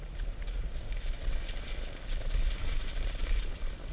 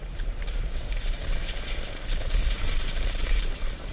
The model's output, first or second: second